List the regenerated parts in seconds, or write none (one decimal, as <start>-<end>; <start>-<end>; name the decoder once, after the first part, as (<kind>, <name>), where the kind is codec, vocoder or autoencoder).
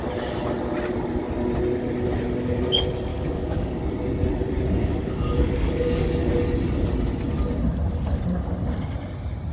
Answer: 3.1-3.8 (codec, DAC); 4.8-6.3